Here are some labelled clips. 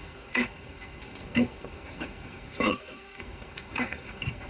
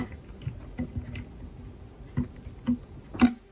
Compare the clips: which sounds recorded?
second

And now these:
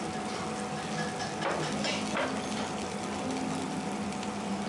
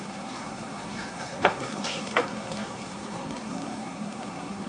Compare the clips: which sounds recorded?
first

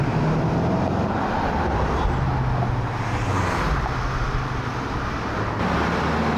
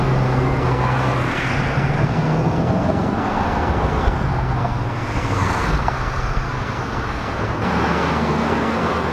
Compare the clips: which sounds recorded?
first